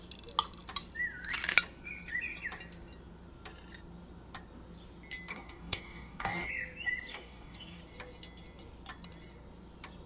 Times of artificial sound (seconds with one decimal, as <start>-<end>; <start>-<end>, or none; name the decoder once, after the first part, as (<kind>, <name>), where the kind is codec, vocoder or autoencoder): 5.3-6.5 (codec, DAC); 7.1-7.8